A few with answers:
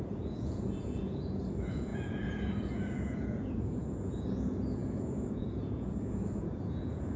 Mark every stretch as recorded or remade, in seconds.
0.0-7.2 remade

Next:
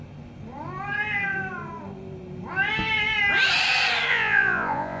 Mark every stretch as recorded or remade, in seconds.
0.0-4.1 recorded; 4.1-5.0 remade